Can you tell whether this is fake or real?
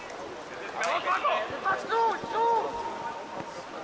real